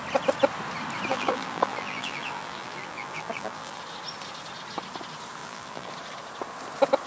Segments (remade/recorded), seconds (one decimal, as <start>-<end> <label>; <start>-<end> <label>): 0.0-1.1 recorded; 1.1-3.8 remade; 3.8-5.4 recorded; 5.4-5.9 remade; 5.9-7.1 recorded